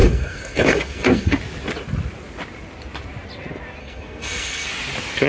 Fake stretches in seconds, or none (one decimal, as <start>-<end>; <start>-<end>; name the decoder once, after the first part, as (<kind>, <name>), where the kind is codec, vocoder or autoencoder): 0.0-1.4 (codec, SNAC); 3.8-4.7